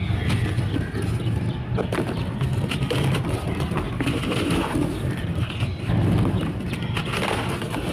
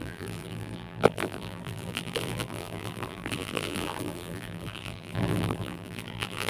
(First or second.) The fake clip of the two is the second